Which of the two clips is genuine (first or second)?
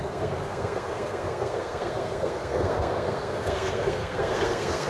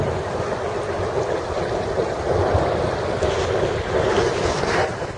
second